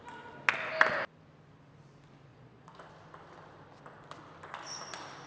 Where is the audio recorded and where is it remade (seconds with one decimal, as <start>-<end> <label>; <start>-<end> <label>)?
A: 0.0-2.3 recorded; 2.3-2.9 remade; 2.9-5.3 recorded